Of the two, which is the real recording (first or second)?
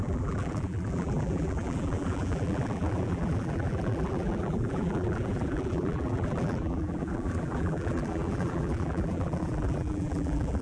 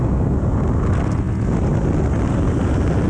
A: second